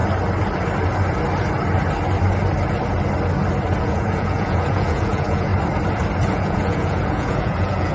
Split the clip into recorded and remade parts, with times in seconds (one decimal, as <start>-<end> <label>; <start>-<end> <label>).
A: 0.0-3.8 recorded; 3.8-5.5 remade; 5.5-6.3 recorded; 6.3-7.9 remade